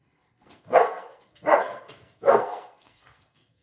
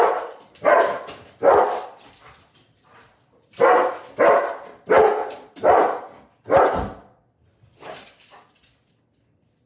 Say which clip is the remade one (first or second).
first